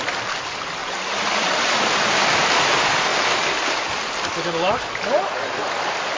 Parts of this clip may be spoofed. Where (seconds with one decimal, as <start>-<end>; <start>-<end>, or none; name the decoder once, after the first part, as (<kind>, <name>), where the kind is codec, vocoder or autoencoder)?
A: 0.8-2.1 (vocoder, BigVGAN v2)